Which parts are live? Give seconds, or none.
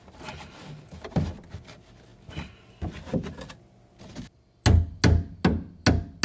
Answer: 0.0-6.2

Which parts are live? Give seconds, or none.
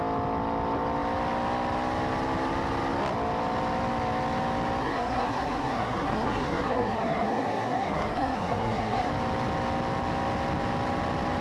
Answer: 0.0-4.8; 9.1-11.4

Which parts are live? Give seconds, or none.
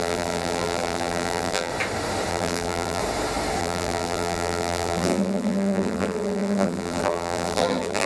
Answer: 1.7-2.3; 3.0-3.6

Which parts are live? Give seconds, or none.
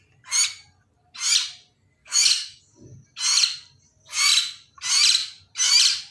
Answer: 0.0-2.0; 2.6-6.1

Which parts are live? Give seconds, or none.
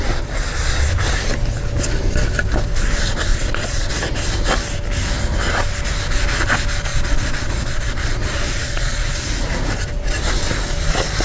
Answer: 0.0-3.3; 3.9-6.9; 9.4-11.2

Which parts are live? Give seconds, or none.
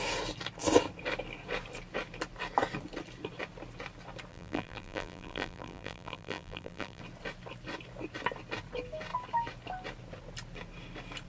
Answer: 0.0-4.3; 7.0-11.3